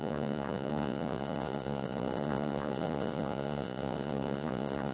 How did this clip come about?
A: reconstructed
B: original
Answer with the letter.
A